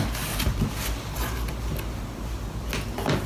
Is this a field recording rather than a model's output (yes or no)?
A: yes